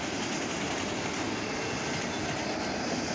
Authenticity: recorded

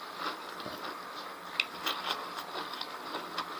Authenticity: recorded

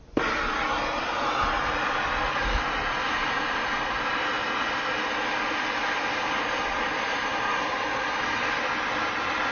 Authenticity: recorded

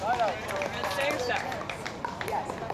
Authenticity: recorded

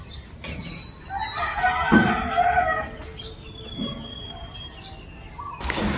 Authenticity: recorded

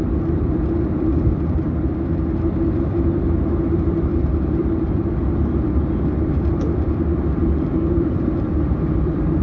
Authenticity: remade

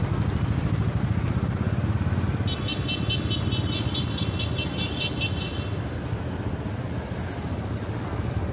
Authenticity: recorded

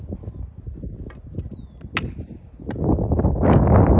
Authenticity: recorded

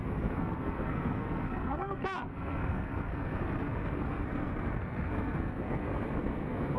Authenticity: remade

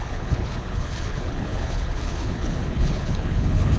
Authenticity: remade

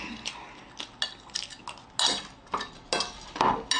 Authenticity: recorded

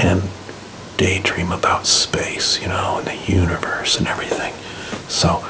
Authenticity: recorded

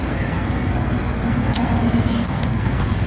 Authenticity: remade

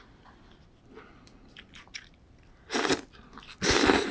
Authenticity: recorded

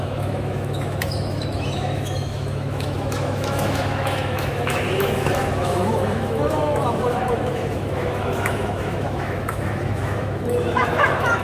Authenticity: remade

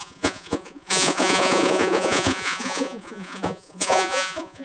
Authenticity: remade